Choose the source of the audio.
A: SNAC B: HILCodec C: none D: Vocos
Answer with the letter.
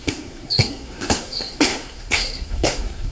A